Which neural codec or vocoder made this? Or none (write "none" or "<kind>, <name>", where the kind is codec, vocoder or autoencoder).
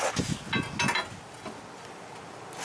none